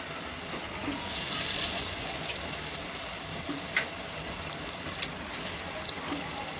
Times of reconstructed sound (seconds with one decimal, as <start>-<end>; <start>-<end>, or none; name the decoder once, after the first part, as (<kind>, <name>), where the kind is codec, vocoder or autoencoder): 0.8-2.3 (vocoder, Vocos)